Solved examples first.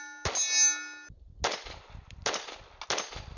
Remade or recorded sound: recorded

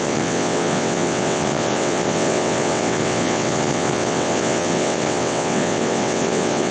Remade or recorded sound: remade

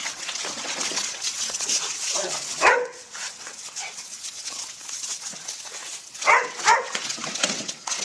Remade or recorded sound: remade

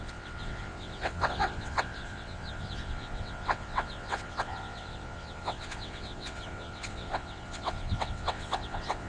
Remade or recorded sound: remade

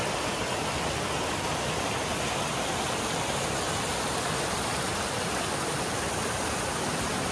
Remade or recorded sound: recorded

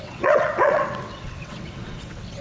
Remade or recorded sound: remade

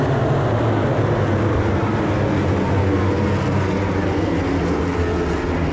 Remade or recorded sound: recorded